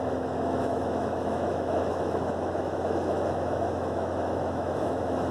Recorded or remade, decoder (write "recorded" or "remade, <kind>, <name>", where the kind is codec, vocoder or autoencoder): remade, autoencoder, DAC-VAE